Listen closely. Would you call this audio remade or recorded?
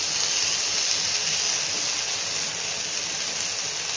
recorded